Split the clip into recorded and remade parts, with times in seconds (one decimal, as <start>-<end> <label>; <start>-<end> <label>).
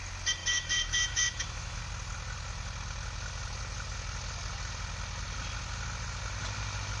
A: 0.0-0.4 recorded; 0.4-1.8 remade; 1.8-7.0 recorded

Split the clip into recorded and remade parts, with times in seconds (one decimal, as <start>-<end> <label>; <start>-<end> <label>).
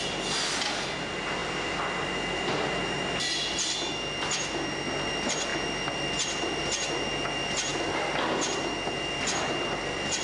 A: 0.0-10.2 recorded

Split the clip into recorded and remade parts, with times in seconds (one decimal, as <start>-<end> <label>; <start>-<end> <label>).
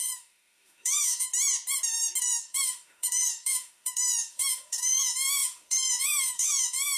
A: 0.0-1.3 remade; 1.3-2.2 recorded; 2.2-7.0 remade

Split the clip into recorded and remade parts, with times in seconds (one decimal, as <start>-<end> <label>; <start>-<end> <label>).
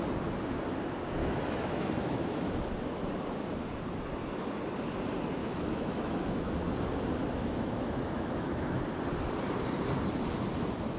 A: 0.0-1.2 recorded; 1.2-2.5 remade; 2.5-5.4 recorded; 5.4-6.5 remade; 6.5-7.2 recorded; 7.2-8.8 remade; 8.8-11.0 recorded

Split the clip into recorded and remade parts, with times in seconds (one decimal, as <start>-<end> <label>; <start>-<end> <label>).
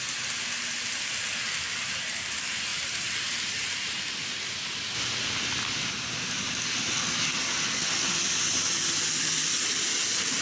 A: 0.0-10.4 recorded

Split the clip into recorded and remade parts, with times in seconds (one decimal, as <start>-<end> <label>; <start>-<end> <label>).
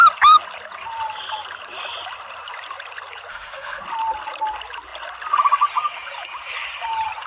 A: 0.0-3.3 recorded; 3.3-3.8 remade; 3.8-7.3 recorded